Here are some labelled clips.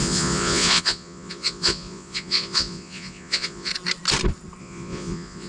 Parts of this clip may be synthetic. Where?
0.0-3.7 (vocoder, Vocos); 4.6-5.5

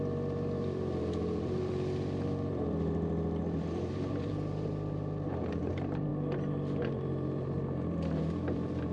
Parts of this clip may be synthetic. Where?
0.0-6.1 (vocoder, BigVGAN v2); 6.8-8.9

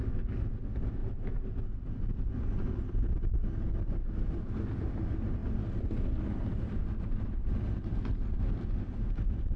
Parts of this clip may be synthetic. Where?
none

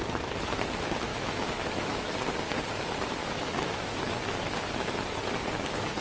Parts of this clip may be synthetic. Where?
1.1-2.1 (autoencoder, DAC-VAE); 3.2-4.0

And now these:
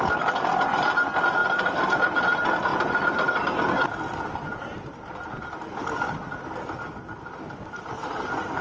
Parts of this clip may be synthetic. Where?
1.4-2.2 (vocoder, BigVGAN v2); 2.7-4.8

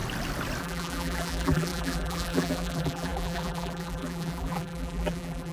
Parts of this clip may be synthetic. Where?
0.6-5.5 (vocoder, BigVGAN v2)

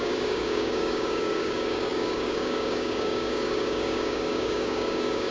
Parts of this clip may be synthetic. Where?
0.0-5.3 (codec, DAC)

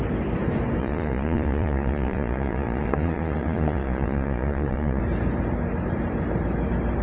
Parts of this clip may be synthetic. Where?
0.8-5.0 (vocoder, Vocos)